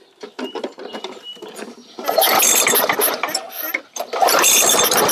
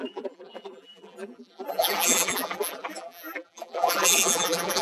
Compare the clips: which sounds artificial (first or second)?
second